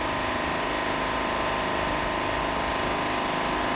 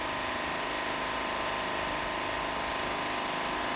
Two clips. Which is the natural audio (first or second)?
first